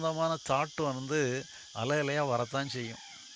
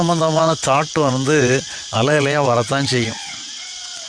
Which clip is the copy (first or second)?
second